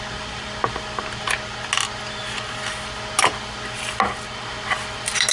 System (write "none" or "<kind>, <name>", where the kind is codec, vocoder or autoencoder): none